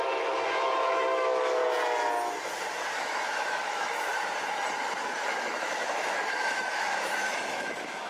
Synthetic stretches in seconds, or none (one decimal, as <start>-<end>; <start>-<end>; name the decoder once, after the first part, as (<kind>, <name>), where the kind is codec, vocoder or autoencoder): 0.0-1.6 (autoencoder, DAC-VAE); 3.0-4.1; 5.3-8.1